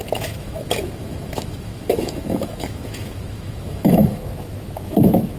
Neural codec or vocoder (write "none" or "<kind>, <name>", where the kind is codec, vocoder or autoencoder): autoencoder, DAC-VAE